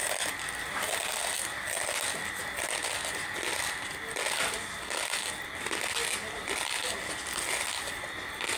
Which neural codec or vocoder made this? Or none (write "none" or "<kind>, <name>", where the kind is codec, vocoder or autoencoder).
none